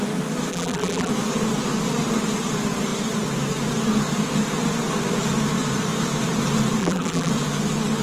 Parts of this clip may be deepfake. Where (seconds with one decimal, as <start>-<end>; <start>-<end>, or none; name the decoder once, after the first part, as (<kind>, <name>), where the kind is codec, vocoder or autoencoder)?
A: 0.5-1.1 (vocoder, BigVGAN v2); 6.8-7.3